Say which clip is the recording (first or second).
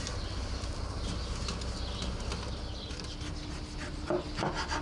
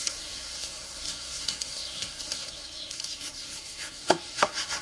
first